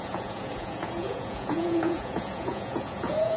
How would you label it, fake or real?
fake